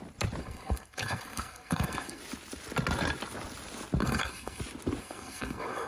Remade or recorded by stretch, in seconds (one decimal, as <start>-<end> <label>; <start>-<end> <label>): 0.0-0.4 recorded; 0.4-2.2 remade; 2.2-4.0 recorded; 4.0-4.6 remade; 4.6-5.0 recorded; 5.0-5.9 remade